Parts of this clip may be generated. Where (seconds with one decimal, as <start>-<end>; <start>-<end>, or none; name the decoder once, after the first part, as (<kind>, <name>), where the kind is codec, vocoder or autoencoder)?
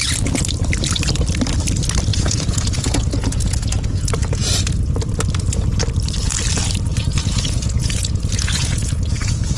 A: 2.1-4.1 (vocoder, Vocos); 6.9-9.6